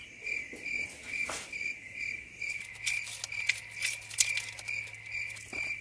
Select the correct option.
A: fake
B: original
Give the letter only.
B